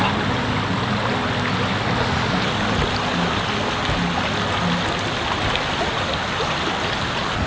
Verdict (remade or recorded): recorded